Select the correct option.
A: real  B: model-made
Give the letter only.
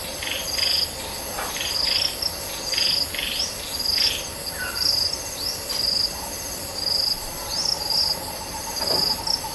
A